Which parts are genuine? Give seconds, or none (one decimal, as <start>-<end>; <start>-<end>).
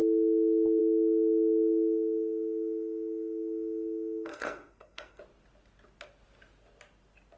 0.0-0.8; 5.2-7.4